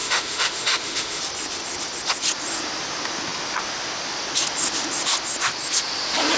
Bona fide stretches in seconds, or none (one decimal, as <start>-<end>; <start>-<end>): 1.2-6.4